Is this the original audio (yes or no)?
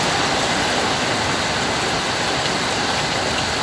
yes